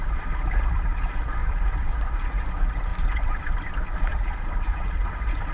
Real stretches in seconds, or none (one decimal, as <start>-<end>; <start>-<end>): 0.0-1.4; 2.5-2.9; 3.4-4.1; 5.1-5.5